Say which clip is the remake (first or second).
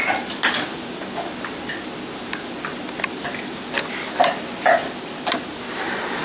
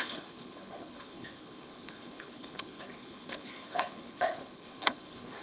second